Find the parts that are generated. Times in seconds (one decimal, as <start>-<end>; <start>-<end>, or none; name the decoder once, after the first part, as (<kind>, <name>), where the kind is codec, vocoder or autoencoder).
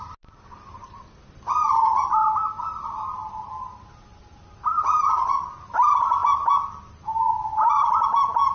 none